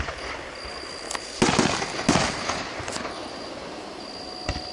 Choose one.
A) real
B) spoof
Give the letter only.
A